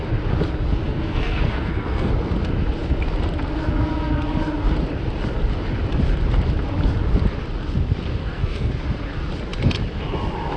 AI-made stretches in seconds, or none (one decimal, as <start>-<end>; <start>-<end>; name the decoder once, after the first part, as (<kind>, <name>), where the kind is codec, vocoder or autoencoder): 0.8-2.1 (codec, SNAC); 8.2-8.7

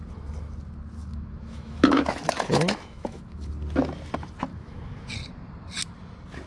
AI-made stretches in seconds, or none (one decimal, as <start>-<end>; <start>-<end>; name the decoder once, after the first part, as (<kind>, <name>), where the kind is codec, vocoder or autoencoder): 1.0-3.5 (autoencoder, DAC-VAE); 4.5-5.1